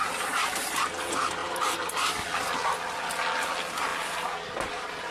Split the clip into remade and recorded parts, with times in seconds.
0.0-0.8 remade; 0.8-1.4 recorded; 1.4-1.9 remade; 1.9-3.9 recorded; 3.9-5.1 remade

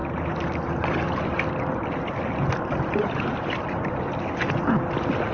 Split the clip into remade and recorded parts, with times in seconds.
0.0-5.3 recorded

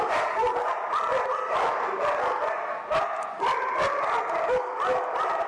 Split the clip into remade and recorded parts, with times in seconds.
0.0-1.1 recorded; 1.1-1.7 remade; 1.7-5.5 recorded

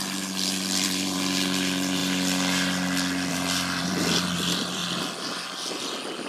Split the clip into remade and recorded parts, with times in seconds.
0.0-2.0 remade; 2.0-3.3 recorded; 3.3-4.8 remade; 4.8-6.3 recorded

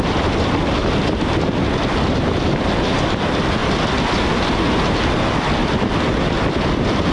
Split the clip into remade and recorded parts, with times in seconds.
0.0-0.8 remade; 0.8-1.5 recorded; 1.5-3.6 remade; 3.6-4.8 recorded; 4.8-5.6 remade; 5.6-6.2 recorded; 6.2-7.1 remade

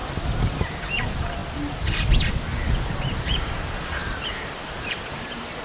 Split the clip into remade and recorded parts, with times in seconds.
0.0-0.9 recorded; 0.9-1.4 remade; 1.4-2.7 recorded; 2.7-5.6 remade